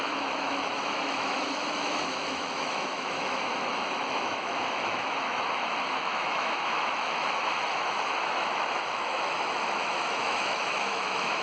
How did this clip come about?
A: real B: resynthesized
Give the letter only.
B